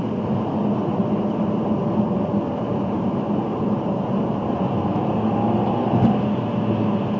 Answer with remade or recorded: recorded